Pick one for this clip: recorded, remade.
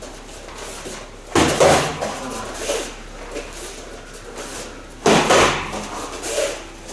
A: recorded